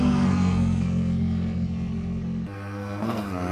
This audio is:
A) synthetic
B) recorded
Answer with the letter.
A